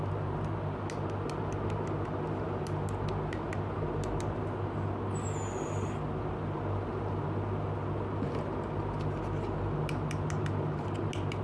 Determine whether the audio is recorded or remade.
recorded